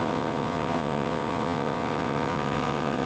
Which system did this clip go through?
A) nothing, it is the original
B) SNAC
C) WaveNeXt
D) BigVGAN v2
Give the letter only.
C